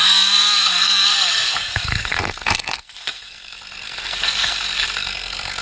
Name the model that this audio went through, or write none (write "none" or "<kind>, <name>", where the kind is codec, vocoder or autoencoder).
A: codec, SNAC